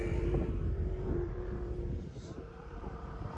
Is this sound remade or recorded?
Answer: remade